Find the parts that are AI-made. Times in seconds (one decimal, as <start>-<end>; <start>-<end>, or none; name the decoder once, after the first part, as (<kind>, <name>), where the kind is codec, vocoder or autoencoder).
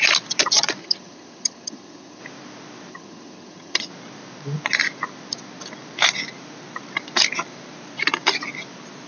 0.8-2.2 (vocoder, HiFi-GAN); 2.9-3.9